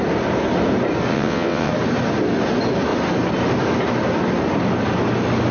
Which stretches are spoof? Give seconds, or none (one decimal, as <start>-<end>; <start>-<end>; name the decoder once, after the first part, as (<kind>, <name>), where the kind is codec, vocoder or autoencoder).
1.1-1.7 (vocoder, WaveNeXt)